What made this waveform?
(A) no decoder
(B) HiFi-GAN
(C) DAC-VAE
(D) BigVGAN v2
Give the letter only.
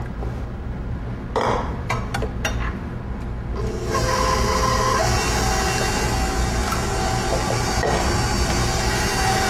A